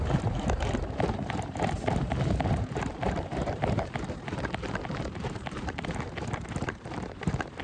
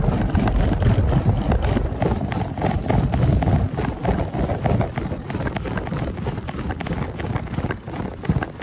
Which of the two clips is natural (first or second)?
second